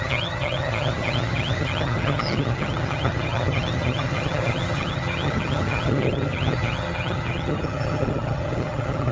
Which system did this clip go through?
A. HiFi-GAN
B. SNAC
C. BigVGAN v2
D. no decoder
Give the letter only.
A